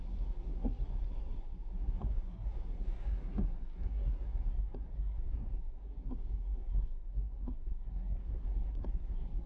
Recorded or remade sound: remade